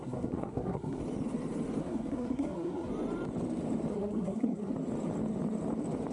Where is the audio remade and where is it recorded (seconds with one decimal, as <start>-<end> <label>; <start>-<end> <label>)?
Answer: 0.0-1.0 remade; 1.0-1.8 recorded; 1.8-2.9 remade; 2.9-3.9 recorded; 3.9-4.7 remade; 4.7-6.1 recorded

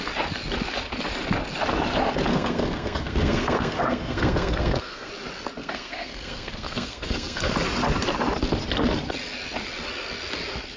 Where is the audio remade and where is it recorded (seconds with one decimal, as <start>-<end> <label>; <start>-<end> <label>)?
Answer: 0.0-2.3 recorded; 2.3-5.1 remade; 5.1-5.6 recorded; 5.6-7.5 remade; 7.5-10.8 recorded

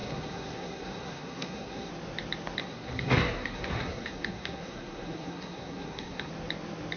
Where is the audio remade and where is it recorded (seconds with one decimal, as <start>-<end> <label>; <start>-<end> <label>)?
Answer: 0.0-1.9 remade; 1.9-2.6 recorded; 2.6-6.3 remade; 6.3-7.0 recorded

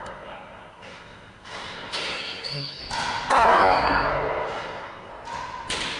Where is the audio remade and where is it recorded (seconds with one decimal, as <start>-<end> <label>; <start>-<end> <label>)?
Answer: 0.0-2.8 remade; 2.8-3.3 recorded; 3.3-5.1 remade; 5.1-6.0 recorded

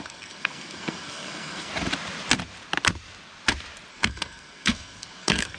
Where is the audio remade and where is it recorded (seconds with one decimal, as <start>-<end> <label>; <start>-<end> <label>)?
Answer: 0.0-1.7 remade; 1.7-3.9 recorded; 3.9-5.6 remade

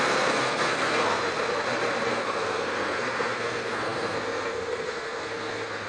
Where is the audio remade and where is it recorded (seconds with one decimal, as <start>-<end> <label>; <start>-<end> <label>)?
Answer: 0.0-1.2 remade; 1.2-2.1 recorded; 2.1-5.9 remade

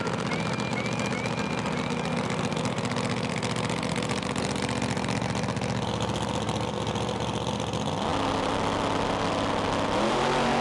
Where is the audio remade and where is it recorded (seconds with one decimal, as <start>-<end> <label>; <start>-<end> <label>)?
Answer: 0.0-10.6 recorded

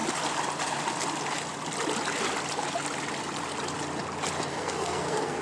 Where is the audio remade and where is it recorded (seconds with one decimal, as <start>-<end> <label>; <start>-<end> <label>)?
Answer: 0.0-4.5 recorded; 4.5-5.4 remade